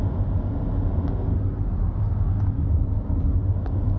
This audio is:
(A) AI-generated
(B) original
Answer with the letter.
B